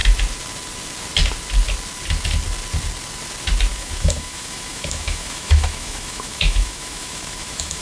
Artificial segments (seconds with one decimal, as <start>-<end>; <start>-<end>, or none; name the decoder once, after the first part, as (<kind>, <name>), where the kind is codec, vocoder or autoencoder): 3.7-7.8 (autoencoder, DAC-VAE)